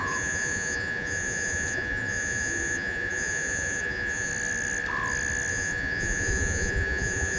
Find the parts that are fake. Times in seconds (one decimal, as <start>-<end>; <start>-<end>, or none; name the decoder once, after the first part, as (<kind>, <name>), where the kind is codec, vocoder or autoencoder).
0.0-4.3 (vocoder, Vocos); 5.5-7.4